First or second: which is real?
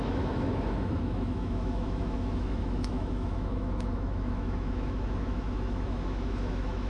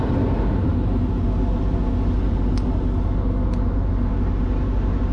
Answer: second